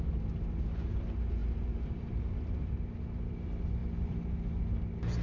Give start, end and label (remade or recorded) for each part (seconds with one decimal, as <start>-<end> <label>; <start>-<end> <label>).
0.0-1.4 recorded; 1.4-2.7 remade; 2.7-3.8 recorded; 3.8-4.6 remade; 4.6-5.2 recorded